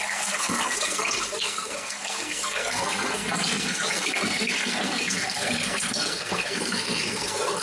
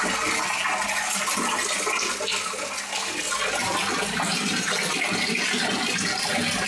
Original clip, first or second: second